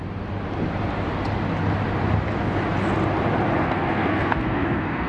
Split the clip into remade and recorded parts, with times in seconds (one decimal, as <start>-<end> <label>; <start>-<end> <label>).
0.0-3.6 recorded; 3.6-5.1 remade

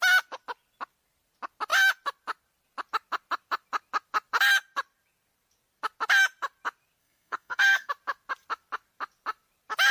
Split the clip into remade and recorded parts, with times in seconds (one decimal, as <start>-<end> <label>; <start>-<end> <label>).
0.0-7.0 recorded; 7.0-7.9 remade; 7.9-9.9 recorded

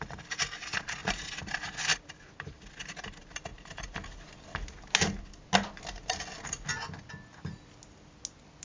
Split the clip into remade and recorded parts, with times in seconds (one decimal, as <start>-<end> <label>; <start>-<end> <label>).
0.0-8.6 recorded

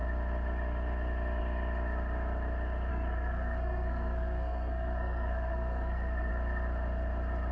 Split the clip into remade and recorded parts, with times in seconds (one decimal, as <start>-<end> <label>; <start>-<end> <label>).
0.0-2.9 recorded; 2.9-6.3 remade; 6.3-7.5 recorded